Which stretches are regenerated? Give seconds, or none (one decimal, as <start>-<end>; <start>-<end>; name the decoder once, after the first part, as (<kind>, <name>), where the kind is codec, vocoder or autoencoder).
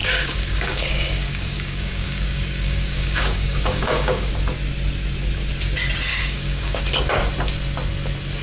0.0-4.3 (codec, DAC); 6.1-6.8